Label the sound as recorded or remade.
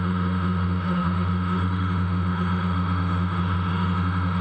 remade